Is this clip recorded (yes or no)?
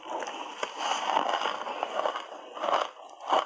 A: yes